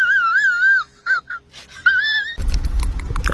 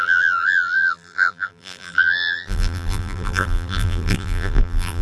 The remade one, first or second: second